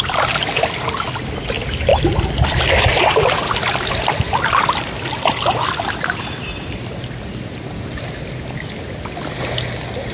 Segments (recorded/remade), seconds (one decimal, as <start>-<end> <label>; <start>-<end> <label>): 0.0-10.1 recorded